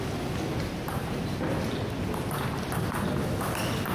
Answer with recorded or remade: recorded